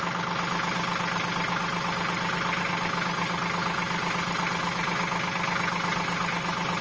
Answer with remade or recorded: recorded